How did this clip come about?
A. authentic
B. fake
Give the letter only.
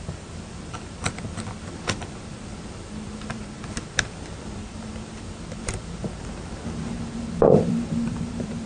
B